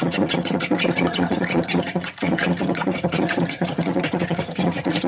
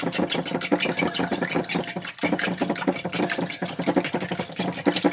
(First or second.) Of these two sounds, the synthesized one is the first